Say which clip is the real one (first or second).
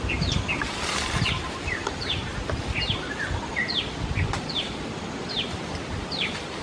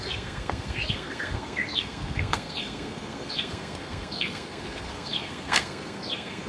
first